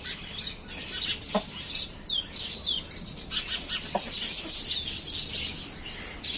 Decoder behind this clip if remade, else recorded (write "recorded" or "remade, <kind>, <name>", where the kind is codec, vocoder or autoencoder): recorded